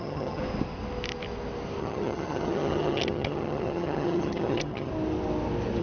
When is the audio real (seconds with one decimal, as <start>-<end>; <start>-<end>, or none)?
0.4-1.8; 4.9-5.8